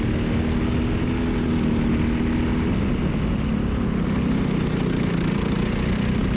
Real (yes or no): yes